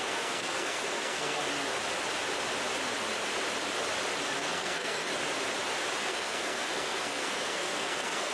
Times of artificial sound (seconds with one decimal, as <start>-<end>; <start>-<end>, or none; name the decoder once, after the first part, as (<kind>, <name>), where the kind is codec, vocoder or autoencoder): 0.0-1.4 (codec, SNAC); 4.4-5.1; 6.0-8.3